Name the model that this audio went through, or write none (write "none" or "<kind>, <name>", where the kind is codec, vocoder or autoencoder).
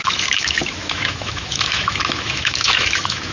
autoencoder, DAC-VAE